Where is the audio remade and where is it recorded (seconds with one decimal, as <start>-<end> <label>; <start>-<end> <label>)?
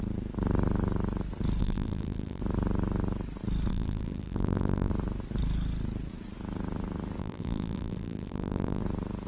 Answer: 0.0-1.6 recorded; 1.6-2.4 remade; 2.4-3.7 recorded; 3.7-4.9 remade; 4.9-7.2 recorded; 7.2-8.8 remade; 8.8-9.3 recorded